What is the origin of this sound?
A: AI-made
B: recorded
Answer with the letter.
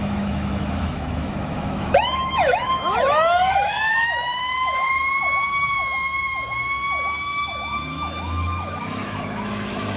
A